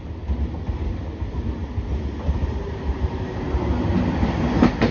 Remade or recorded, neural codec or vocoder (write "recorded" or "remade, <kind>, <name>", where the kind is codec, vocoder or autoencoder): recorded